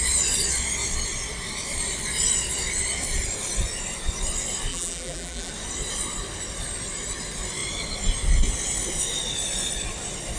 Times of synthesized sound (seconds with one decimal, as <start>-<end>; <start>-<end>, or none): 4.7-5.5